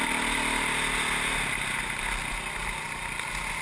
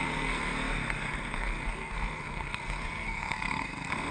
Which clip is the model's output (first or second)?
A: second